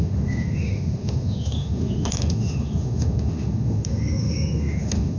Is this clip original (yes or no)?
no